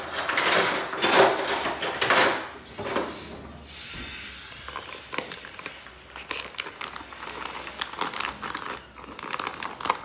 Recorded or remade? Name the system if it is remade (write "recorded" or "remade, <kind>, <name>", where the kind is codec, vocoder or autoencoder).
recorded